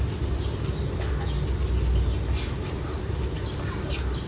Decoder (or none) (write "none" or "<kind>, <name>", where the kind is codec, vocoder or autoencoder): none